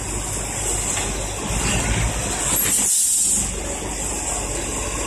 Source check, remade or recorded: recorded